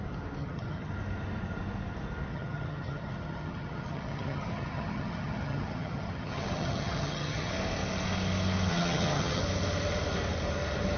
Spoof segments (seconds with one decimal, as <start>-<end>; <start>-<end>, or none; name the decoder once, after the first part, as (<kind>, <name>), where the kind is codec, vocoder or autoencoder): 0.4-0.9 (vocoder, HiFi-GAN); 2.3-7.5; 8.7-9.4